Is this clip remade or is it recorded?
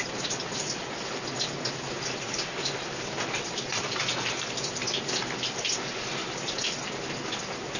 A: recorded